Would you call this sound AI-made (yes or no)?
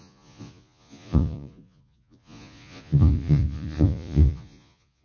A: yes